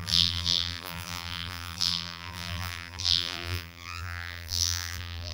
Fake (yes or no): yes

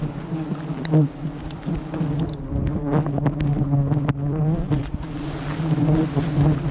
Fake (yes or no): no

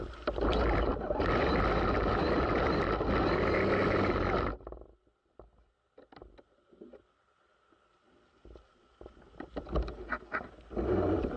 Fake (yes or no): no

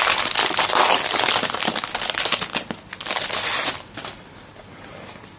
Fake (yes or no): no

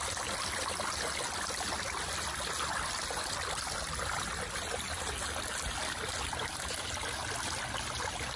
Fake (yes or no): no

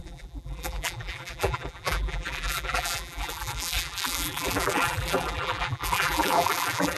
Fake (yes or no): yes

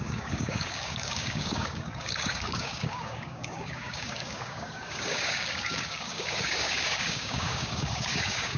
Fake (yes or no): yes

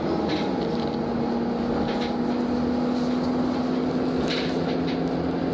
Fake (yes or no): no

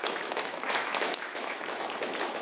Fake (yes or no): yes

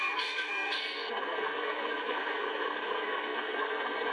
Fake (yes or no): yes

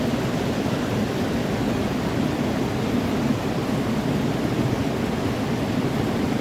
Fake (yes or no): no